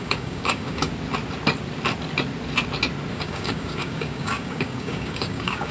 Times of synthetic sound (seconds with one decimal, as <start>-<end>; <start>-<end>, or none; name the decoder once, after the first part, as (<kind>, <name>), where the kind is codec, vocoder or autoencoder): 0.0-0.9 (codec, DAC); 3.1-5.7